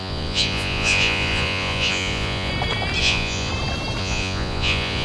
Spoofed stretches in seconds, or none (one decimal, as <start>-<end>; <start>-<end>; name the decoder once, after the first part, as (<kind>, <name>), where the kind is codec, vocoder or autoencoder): 0.0-2.5 (vocoder, Vocos); 3.0-3.5; 4.0-5.0